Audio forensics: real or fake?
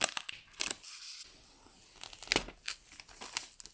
real